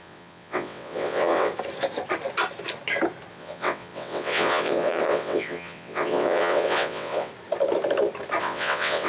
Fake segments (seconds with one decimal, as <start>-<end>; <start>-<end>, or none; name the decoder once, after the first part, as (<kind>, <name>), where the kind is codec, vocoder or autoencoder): 0.0-1.5 (vocoder, WaveNeXt); 3.3-7.3; 8.4-9.1